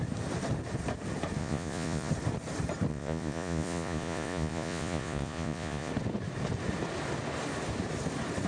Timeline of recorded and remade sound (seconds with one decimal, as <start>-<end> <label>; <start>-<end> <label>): 0.0-1.4 recorded; 1.4-2.1 remade; 2.1-2.9 recorded; 2.9-5.9 remade; 5.9-8.5 recorded

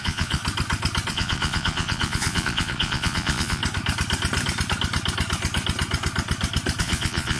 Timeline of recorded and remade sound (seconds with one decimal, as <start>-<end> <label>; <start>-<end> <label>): 0.0-0.4 remade; 0.4-1.1 recorded; 1.1-3.6 remade; 3.6-6.8 recorded; 6.8-7.4 remade

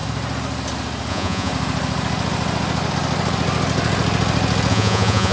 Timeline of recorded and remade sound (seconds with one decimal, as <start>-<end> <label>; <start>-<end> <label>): 0.0-1.1 recorded; 1.1-1.5 remade; 1.5-4.7 recorded; 4.7-5.3 remade

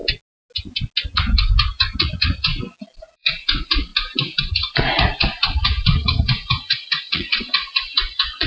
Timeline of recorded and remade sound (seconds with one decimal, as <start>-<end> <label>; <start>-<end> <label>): 0.0-2.0 recorded; 2.0-2.5 remade; 2.5-3.0 recorded; 3.0-3.9 remade; 3.9-4.5 recorded; 4.5-8.5 remade

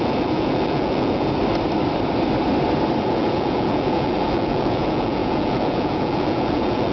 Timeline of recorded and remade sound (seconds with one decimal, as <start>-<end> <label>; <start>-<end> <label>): 0.0-1.4 remade; 1.4-3.0 recorded; 3.0-6.9 remade